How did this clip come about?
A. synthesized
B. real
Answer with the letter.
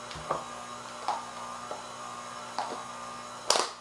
B